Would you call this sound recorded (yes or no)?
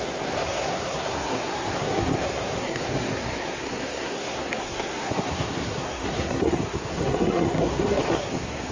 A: no